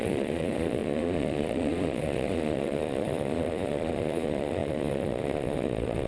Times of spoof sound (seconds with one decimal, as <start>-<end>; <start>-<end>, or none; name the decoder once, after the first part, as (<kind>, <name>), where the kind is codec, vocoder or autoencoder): 0.0-6.1 (vocoder, Vocos)